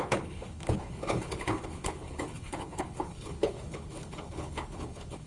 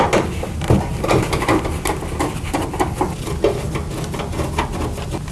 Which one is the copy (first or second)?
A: first